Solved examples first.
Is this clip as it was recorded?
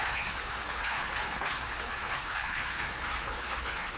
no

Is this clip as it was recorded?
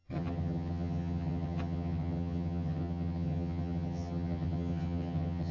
no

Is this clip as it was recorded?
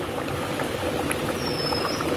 yes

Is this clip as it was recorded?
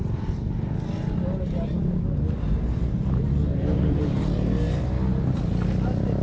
yes